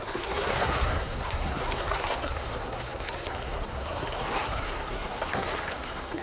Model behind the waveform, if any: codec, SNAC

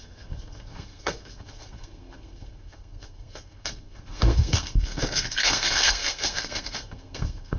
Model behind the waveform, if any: codec, SNAC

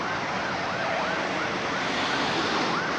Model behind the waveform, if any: none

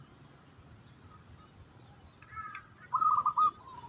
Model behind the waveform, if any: none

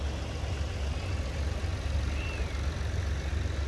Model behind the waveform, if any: none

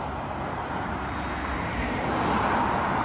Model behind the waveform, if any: none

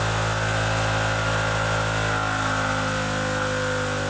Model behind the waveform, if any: none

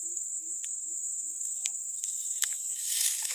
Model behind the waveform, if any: codec, SNAC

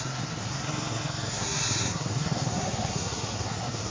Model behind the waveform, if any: codec, SNAC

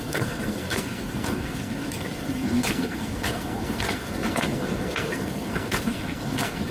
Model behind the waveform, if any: codec, SNAC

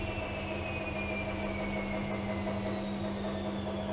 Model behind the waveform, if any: none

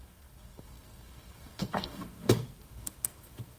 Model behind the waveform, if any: codec, SNAC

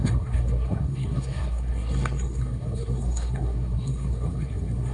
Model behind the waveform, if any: codec, SNAC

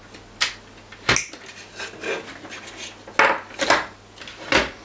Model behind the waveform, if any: none